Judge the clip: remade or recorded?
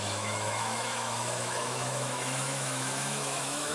remade